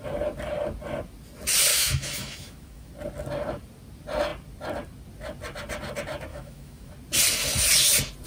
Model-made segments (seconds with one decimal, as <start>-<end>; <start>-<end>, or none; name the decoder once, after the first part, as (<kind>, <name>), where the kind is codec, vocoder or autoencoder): 1.7-2.9 (autoencoder, DAC-VAE); 6.3-6.9